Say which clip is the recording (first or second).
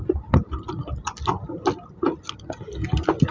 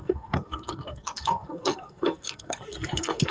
first